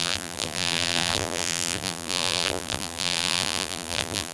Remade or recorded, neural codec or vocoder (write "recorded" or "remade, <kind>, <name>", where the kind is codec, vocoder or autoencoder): remade, vocoder, BigVGAN v2